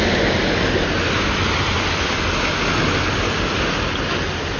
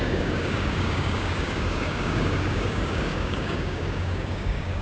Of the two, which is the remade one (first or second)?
second